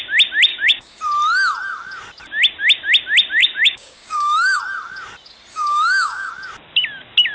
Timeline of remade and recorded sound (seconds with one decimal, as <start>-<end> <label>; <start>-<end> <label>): 0.0-0.5 recorded; 0.5-1.0 remade; 1.0-3.4 recorded; 3.4-4.6 remade; 4.6-5.5 recorded; 5.5-6.3 remade; 6.3-7.3 recorded